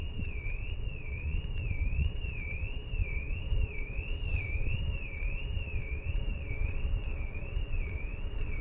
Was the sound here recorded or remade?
remade